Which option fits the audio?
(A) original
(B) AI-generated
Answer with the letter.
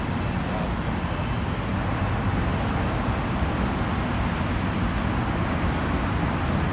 A